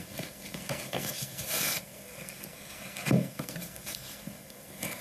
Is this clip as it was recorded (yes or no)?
no